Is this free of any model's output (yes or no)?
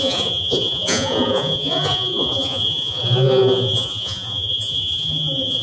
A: no